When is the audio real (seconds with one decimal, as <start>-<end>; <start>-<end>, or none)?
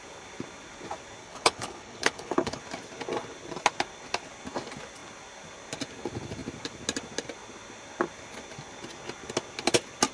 0.0-1.2; 2.6-10.1